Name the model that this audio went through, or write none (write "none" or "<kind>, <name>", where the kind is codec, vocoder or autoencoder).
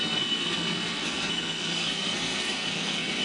codec, SNAC